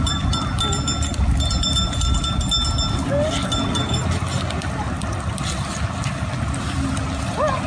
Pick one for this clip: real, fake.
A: real